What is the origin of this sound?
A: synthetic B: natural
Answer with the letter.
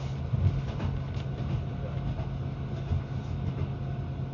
B